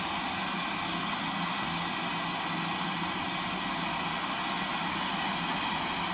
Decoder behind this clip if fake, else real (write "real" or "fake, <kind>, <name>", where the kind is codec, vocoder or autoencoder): real